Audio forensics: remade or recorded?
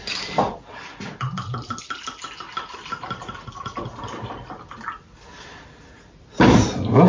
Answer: recorded